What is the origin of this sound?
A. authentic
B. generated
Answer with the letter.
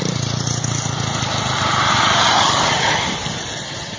A